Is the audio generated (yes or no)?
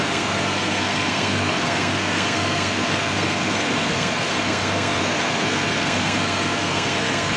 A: yes